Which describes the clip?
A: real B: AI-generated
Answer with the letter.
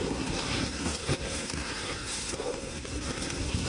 B